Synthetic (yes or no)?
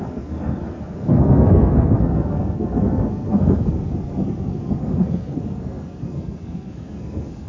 yes